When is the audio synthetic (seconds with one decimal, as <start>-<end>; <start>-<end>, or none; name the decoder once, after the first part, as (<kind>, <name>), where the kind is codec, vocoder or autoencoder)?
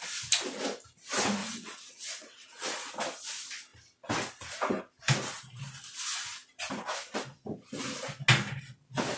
1.4-2.9 (vocoder, WaveNeXt)